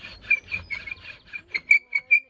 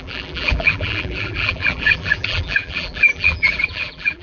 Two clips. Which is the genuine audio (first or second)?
first